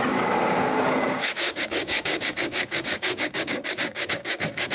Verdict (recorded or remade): remade